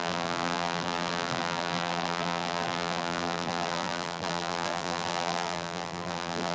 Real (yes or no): no